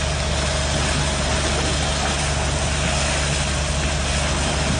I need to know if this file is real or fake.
real